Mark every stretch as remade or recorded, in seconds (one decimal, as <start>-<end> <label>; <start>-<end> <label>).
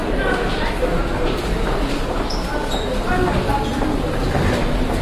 0.0-5.0 recorded